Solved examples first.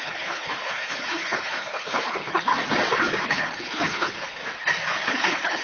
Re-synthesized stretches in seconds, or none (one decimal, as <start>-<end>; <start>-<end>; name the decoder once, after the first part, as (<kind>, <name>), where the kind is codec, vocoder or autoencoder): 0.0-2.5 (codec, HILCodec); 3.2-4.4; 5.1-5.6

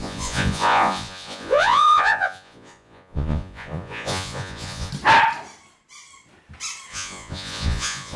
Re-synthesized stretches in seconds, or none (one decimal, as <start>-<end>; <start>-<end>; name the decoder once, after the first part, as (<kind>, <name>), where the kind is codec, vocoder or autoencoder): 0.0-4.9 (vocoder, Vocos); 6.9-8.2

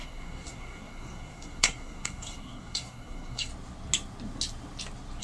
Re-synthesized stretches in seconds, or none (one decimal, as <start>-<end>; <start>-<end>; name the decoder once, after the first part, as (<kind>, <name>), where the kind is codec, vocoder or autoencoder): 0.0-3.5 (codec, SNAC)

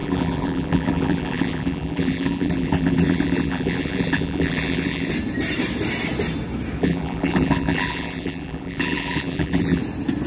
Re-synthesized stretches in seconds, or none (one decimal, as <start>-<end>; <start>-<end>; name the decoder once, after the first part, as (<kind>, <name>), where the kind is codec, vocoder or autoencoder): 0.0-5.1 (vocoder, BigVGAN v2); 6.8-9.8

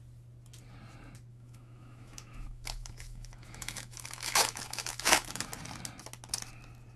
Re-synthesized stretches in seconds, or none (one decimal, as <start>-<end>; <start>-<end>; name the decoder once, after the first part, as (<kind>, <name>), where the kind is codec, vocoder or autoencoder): 1.3-5.5 (autoencoder, DAC-VAE)

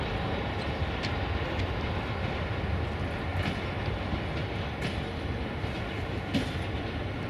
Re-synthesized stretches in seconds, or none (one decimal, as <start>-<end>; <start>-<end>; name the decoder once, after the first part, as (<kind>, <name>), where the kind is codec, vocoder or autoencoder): none